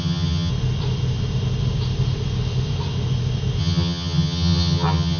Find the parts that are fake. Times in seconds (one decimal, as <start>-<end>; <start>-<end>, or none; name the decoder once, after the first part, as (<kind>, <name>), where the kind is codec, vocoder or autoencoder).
0.0-0.5 (vocoder, HiFi-GAN); 3.6-5.2